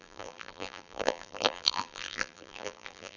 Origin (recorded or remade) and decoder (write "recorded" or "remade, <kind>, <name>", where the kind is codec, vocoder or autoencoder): remade, vocoder, BigVGAN v2